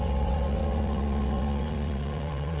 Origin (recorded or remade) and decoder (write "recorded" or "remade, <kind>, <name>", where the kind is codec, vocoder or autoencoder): remade, vocoder, WaveNeXt